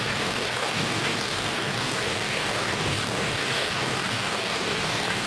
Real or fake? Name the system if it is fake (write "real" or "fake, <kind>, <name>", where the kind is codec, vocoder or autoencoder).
fake, codec, DAC